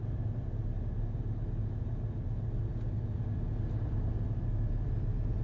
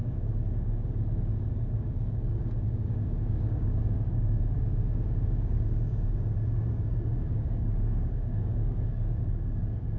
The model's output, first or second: second